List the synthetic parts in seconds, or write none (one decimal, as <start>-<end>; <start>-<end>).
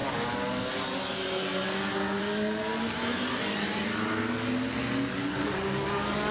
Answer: 5.1-6.3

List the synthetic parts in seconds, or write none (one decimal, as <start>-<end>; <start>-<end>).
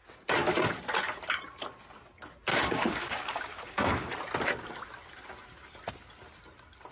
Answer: 2.5-4.1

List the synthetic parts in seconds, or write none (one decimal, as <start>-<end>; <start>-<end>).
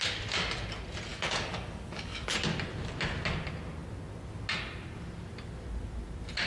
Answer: 1.1-2.3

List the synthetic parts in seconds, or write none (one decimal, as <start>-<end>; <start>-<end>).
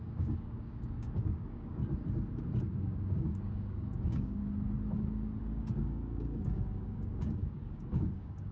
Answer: 0.0-1.8; 2.6-4.4; 5.4-8.5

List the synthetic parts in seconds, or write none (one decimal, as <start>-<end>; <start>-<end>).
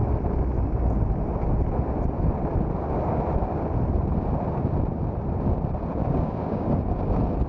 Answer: 6.0-6.9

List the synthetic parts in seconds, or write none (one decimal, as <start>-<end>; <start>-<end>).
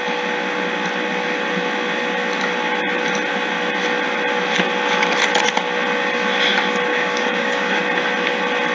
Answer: 6.9-7.8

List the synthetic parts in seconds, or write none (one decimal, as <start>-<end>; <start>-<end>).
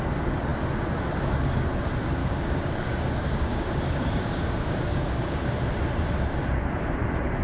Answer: 2.2-5.4